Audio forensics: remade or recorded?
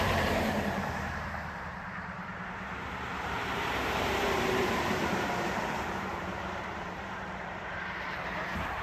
remade